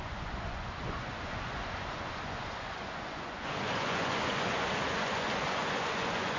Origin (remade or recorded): remade